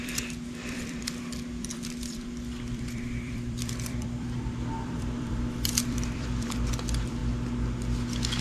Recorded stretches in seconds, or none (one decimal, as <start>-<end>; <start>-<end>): 7.2-8.4